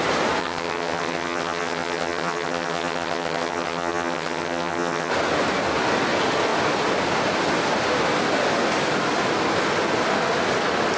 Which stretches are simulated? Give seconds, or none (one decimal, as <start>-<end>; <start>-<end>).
0.4-5.1